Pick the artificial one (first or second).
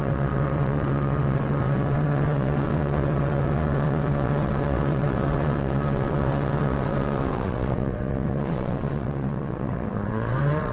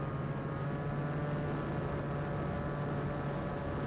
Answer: first